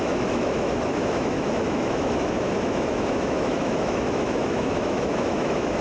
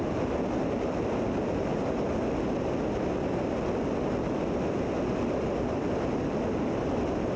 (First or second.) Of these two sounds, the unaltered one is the second